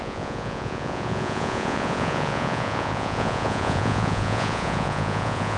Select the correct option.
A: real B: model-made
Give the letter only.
B